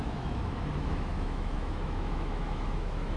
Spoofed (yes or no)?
yes